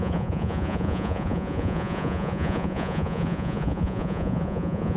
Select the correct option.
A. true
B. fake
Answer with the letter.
B